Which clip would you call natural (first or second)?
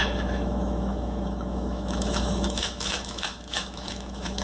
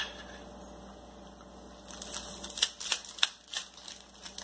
second